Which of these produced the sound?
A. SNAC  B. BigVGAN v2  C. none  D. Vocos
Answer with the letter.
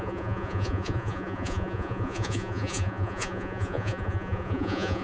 D